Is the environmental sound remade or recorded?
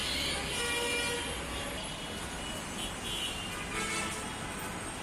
recorded